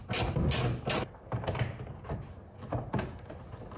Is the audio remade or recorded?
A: recorded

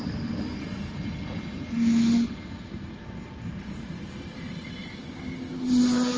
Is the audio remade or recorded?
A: recorded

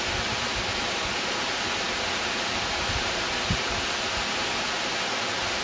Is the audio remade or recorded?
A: recorded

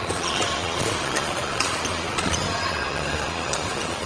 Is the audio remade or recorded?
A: remade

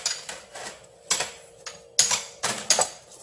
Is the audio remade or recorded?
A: recorded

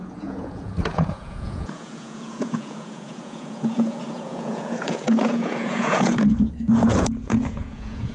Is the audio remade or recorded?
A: remade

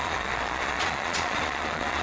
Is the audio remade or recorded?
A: remade